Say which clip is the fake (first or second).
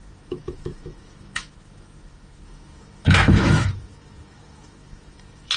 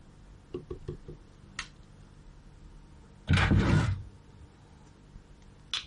first